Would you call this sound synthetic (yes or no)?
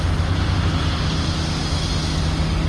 no